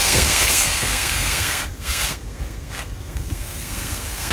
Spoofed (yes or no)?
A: yes